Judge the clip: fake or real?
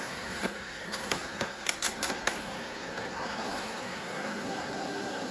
fake